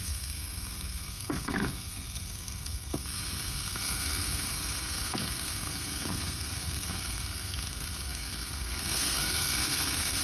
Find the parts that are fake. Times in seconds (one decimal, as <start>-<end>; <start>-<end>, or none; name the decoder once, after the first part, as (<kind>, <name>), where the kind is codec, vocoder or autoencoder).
0.0-10.2 (codec, SNAC)